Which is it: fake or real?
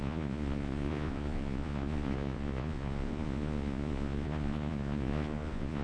fake